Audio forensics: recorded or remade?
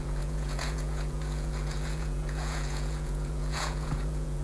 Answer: remade